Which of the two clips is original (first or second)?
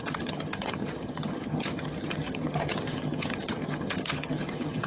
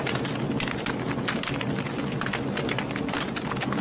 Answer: second